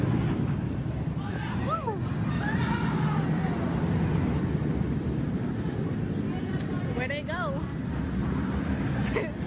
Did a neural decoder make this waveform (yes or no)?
no